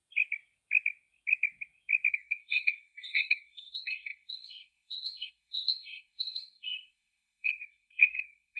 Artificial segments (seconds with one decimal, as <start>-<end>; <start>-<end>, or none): 2.1-8.6